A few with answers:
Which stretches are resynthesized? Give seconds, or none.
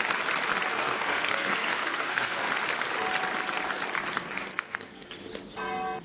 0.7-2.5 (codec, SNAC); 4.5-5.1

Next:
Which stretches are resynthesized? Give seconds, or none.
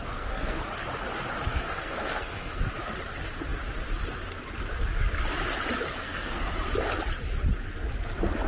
0.0-0.6 (codec, SNAC); 1.5-2.6; 6.0-6.5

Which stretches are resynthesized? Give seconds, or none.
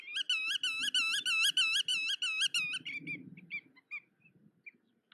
none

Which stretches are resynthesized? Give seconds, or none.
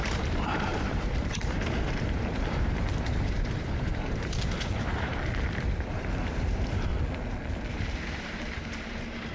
0.0-6.9 (vocoder, BigVGAN v2); 7.7-9.3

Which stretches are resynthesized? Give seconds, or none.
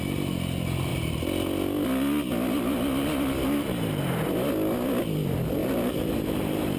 5.6-6.8 (vocoder, BigVGAN v2)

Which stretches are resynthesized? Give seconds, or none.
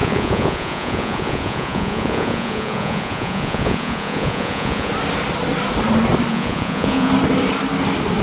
0.0-4.9 (vocoder, Vocos); 6.3-7.1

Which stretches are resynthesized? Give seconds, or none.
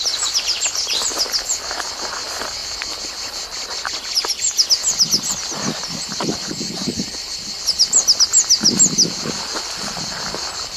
none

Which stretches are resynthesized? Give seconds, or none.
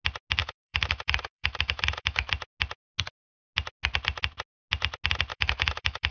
0.4-2.3 (autoencoder, DAC-VAE); 5.3-6.1